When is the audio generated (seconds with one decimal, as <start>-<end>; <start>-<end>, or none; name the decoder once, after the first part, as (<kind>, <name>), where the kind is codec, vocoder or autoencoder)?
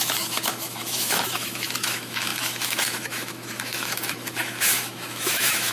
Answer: 0.0-5.7 (autoencoder, DAC-VAE)